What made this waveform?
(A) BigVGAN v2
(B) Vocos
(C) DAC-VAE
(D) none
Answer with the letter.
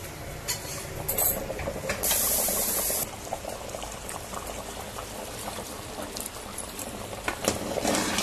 A